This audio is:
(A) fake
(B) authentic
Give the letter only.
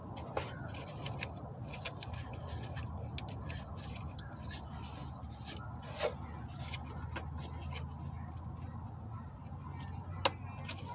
B